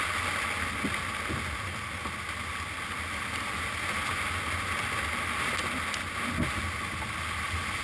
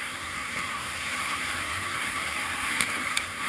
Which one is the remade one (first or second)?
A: second